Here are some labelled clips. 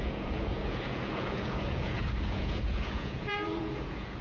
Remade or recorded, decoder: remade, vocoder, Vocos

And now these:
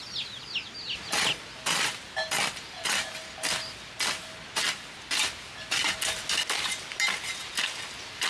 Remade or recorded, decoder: recorded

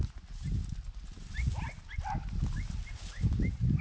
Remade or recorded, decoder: recorded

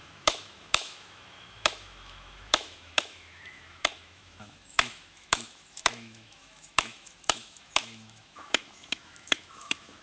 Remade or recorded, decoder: remade, autoencoder, DAC-VAE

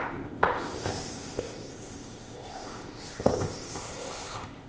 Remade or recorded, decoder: remade, codec, ZipCodec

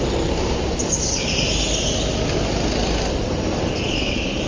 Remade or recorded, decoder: recorded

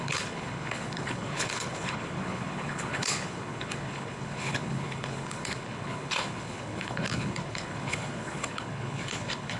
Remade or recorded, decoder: remade, codec, HILCodec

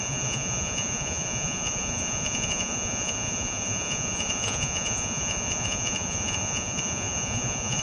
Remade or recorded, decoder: remade, vocoder, Vocos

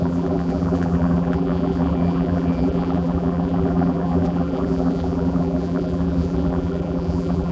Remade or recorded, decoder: remade, vocoder, BigVGAN v2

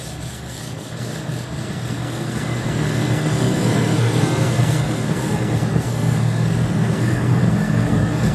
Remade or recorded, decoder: remade, codec, SNAC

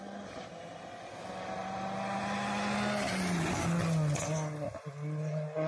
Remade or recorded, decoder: recorded